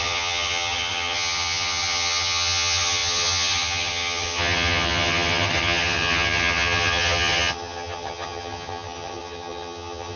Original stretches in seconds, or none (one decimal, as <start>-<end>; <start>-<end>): none